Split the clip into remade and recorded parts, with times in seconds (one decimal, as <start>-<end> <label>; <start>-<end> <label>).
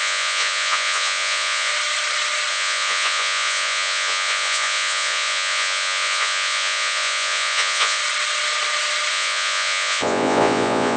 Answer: 0.0-1.7 remade; 1.7-2.5 recorded; 2.5-8.0 remade; 8.0-9.1 recorded; 9.1-11.0 remade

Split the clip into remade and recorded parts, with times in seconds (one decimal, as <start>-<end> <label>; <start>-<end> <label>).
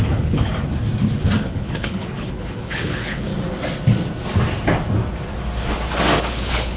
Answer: 0.0-0.5 remade; 0.5-1.4 recorded; 1.4-3.3 remade; 3.3-6.2 recorded; 6.2-6.8 remade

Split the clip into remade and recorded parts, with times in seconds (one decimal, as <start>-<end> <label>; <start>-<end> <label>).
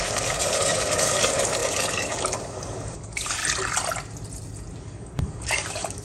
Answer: 0.0-3.4 remade; 3.4-4.8 recorded; 4.8-6.0 remade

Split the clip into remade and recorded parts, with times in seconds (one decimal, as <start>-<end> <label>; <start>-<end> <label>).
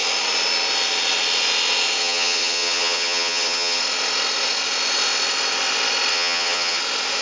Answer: 0.0-2.0 recorded; 2.0-3.8 remade; 3.8-6.1 recorded; 6.1-6.8 remade; 6.8-7.2 recorded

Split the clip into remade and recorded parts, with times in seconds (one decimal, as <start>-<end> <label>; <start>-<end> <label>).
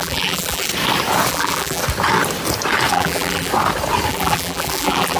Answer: 0.0-0.7 remade; 0.7-1.3 recorded; 1.3-1.8 remade; 1.8-2.9 recorded; 2.9-3.5 remade; 3.5-4.1 recorded; 4.1-5.2 remade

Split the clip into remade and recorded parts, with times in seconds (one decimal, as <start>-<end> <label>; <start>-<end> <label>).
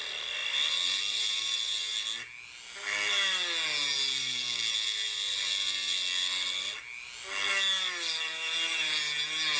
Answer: 0.0-9.6 recorded